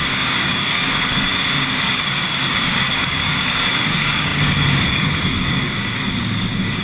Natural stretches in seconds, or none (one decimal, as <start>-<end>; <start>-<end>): none